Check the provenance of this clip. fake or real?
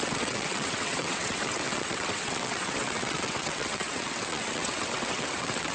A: fake